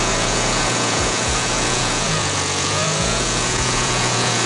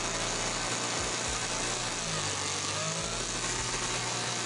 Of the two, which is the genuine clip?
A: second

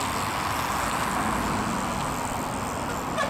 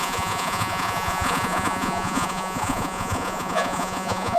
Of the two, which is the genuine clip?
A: first